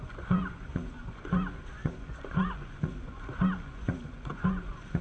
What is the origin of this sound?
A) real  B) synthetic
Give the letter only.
B